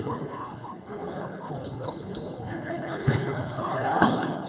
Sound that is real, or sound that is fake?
fake